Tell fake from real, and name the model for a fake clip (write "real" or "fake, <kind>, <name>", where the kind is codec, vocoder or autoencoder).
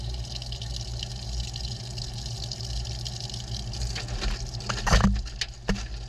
real